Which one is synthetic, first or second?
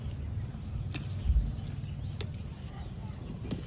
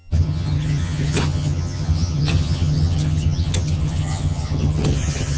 second